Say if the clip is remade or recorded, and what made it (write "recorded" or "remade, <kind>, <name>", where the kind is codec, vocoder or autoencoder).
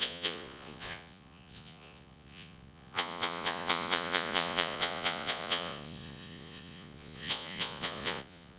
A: remade, vocoder, Vocos